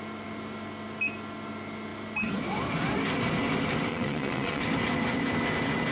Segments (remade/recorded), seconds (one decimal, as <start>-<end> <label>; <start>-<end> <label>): 0.0-3.9 recorded; 3.9-4.6 remade; 4.6-5.9 recorded